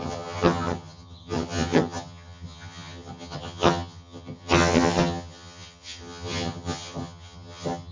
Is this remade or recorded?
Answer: remade